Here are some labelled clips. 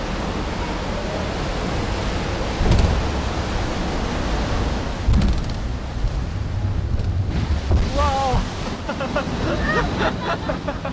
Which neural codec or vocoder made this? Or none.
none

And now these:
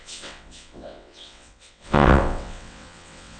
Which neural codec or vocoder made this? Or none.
vocoder, WaveNeXt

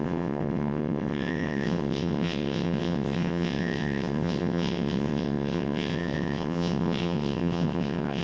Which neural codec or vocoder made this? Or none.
vocoder, WaveNeXt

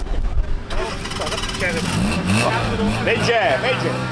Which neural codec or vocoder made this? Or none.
none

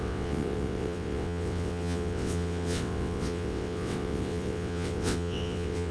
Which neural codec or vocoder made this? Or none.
vocoder, WaveNeXt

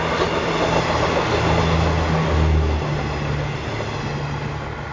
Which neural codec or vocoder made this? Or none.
none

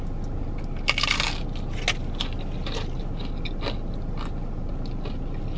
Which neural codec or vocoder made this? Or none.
none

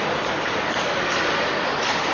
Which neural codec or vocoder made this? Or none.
none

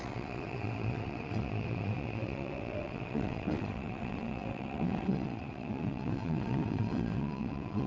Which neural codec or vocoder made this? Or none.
vocoder, WaveNeXt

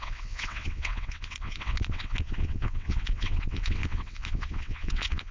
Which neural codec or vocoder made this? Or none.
vocoder, WaveNeXt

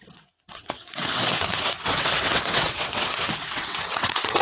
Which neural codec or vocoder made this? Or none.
vocoder, WaveNeXt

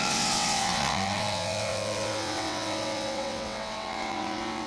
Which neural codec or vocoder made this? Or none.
vocoder, WaveNeXt